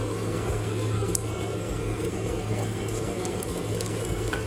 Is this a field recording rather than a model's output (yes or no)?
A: no